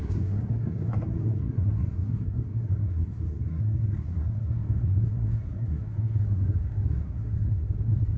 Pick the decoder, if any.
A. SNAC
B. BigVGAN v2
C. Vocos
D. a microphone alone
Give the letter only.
A